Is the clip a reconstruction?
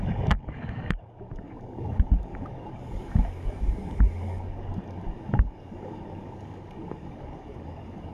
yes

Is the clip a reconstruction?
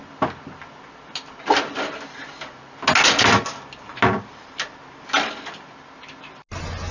no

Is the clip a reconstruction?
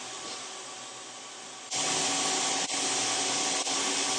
no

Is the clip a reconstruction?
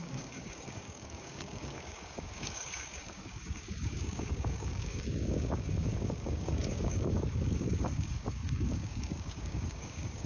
yes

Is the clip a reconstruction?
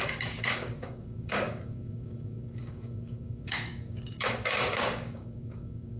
yes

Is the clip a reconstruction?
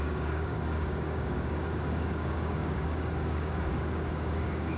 yes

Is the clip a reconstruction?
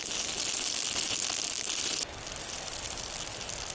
no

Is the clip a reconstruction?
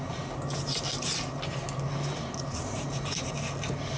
no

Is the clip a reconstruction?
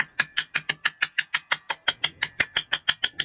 no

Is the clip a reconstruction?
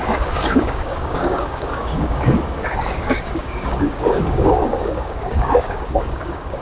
yes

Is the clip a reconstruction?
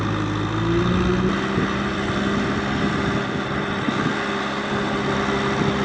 no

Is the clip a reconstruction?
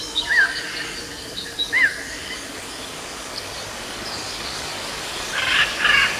yes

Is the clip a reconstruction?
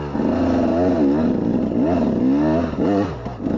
no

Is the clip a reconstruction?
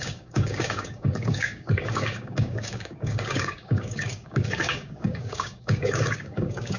yes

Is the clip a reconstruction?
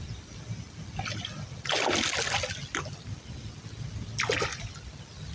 no